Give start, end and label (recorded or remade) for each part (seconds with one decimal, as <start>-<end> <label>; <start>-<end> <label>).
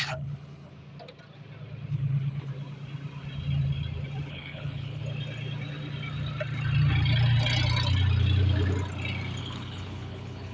0.0-0.7 remade; 0.7-1.9 recorded; 1.9-2.5 remade; 2.5-4.3 recorded; 4.3-5.0 remade; 5.0-9.4 recorded; 9.4-10.5 remade